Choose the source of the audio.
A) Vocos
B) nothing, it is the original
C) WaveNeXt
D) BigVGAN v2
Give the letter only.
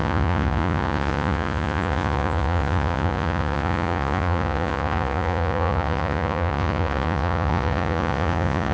A